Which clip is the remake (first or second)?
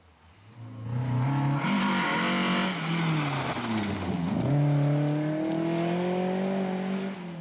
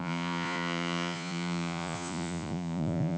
second